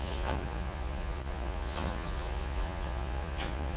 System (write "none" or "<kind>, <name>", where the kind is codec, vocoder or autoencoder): vocoder, Vocos